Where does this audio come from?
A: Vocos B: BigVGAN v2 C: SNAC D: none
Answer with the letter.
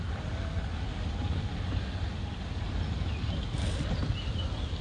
D